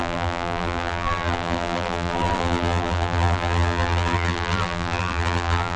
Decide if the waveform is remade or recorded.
remade